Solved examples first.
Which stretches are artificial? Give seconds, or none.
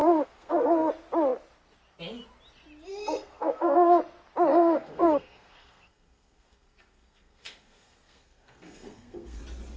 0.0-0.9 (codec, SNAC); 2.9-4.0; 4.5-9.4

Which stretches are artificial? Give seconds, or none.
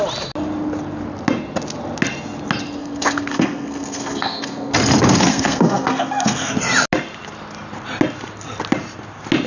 2.8-4.7 (codec, SNAC); 5.3-6.5